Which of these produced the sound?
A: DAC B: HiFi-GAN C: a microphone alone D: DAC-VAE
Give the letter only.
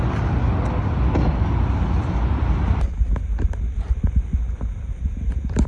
C